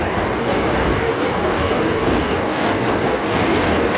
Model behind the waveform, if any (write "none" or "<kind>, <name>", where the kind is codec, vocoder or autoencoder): codec, DAC